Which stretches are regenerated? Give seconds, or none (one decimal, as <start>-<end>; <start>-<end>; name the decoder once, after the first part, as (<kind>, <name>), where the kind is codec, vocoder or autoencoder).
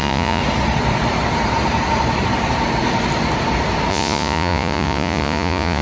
0.0-0.4 (vocoder, Vocos); 3.9-5.8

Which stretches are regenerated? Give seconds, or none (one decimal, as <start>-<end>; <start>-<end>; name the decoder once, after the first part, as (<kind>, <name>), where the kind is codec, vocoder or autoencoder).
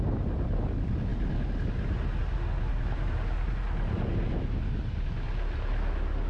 none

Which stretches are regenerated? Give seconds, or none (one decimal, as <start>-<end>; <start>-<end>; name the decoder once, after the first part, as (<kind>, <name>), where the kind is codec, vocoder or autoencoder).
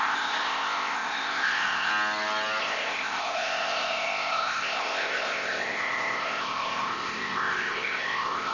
0.0-1.9 (codec, ZipCodec); 2.6-8.5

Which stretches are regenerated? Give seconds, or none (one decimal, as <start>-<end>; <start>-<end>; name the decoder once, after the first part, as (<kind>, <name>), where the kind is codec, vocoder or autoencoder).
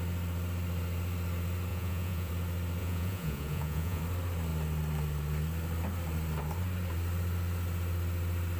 1.7-2.3 (vocoder, Vocos); 2.8-4.0